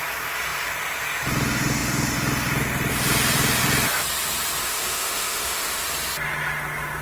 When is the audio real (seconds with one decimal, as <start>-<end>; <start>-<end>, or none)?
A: 0.0-4.6; 5.8-7.0

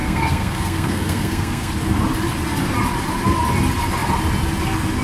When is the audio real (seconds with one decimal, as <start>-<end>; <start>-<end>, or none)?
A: 1.7-5.0

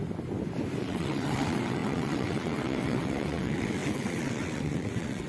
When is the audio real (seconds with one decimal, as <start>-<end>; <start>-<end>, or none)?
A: 0.0-0.8

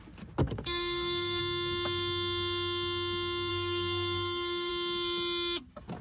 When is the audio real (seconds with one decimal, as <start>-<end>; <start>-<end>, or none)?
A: 0.0-0.4; 1.4-3.5; 4.7-6.0